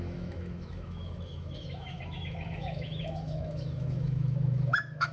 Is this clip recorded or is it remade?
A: remade